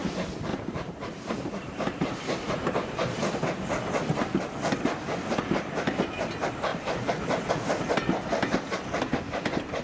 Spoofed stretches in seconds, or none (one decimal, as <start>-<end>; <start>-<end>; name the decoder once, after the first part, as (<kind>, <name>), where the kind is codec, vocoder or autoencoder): 0.5-2.4 (vocoder, BigVGAN v2); 6.7-7.5